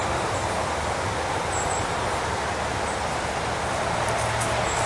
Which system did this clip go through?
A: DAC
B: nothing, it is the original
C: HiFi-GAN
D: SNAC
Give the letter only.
B